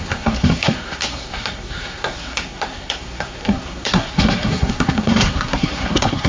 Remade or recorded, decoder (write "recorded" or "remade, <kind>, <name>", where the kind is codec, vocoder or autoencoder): remade, codec, SNAC